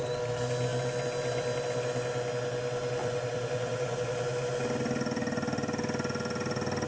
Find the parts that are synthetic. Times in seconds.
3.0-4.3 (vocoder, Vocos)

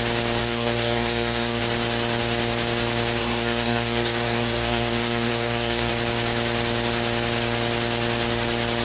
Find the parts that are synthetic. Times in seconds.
0.4-1.6 (codec, SNAC); 3.2-5.9

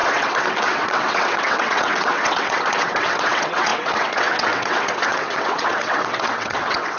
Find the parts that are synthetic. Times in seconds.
0.0-7.0 (vocoder, WaveNeXt)